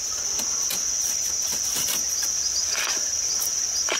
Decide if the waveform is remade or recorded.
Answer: recorded